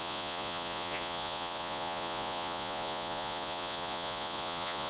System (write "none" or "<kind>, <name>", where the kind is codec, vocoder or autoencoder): vocoder, Vocos